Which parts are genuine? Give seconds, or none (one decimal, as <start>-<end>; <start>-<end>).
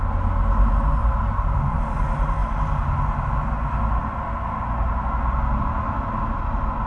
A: 0.0-1.0; 1.8-6.9